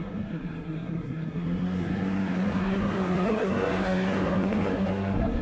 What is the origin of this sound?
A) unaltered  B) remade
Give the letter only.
B